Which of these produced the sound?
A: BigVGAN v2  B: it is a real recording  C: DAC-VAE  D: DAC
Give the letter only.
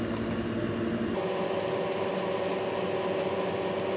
B